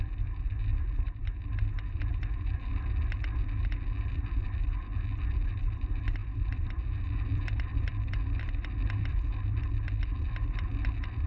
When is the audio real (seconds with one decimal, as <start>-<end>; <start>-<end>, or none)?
2.7-4.1; 4.9-5.6